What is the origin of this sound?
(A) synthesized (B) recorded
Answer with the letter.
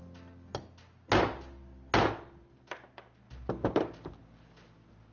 B